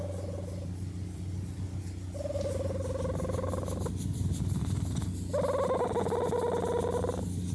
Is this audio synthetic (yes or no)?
no